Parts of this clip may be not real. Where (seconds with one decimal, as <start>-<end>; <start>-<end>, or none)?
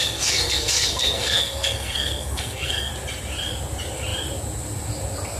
0.0-2.9